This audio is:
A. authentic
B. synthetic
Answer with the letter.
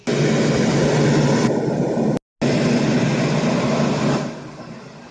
A